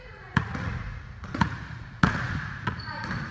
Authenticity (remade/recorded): remade